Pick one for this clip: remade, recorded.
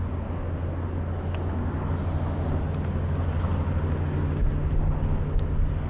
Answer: recorded